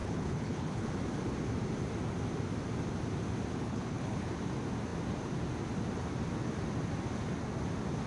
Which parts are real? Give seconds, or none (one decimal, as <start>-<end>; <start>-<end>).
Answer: 0.9-3.5; 4.3-8.1

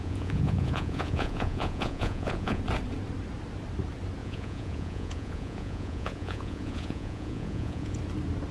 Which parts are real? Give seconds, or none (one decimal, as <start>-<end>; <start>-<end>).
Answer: 2.6-4.2; 8.0-8.5

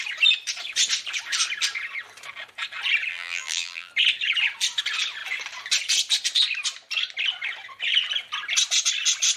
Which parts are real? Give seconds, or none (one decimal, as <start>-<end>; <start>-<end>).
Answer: 0.0-3.1; 3.9-9.4

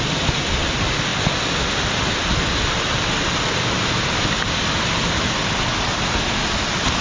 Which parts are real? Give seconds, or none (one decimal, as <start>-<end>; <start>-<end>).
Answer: 0.0-7.0

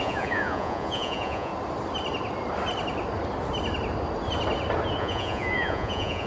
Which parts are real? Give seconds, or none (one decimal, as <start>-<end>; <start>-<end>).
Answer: 1.5-5.0

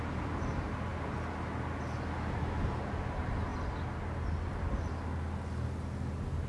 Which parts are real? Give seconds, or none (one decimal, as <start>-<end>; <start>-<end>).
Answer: 0.0-6.5

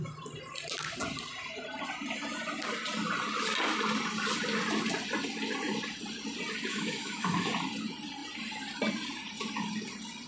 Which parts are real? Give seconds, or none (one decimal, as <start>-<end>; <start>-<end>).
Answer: 0.0-6.7; 7.5-10.3

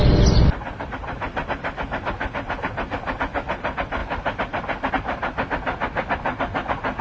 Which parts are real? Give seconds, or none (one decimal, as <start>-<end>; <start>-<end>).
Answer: 0.0-7.0